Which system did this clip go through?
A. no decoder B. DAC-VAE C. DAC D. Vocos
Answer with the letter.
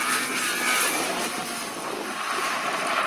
A